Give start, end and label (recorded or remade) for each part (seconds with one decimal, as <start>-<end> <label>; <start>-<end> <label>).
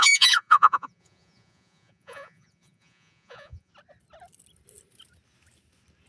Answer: 0.0-3.7 remade; 3.7-6.1 recorded